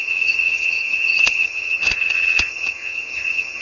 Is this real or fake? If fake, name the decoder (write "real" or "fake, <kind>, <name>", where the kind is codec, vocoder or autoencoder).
fake, vocoder, HiFi-GAN